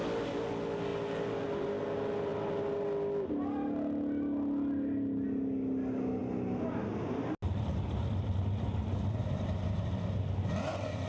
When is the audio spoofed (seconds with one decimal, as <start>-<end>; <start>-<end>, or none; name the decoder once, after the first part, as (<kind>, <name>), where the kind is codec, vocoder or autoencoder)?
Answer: none